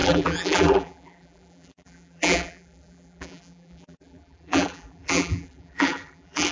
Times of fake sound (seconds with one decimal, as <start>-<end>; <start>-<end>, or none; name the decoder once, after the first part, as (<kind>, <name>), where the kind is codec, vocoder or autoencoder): 0.0-6.5 (vocoder, BigVGAN v2)